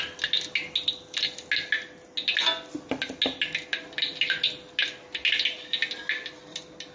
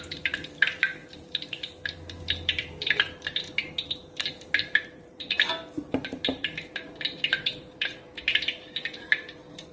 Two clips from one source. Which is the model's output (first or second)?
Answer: second